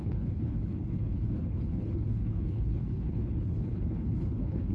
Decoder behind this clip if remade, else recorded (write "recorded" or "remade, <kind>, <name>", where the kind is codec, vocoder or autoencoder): remade, codec, HILCodec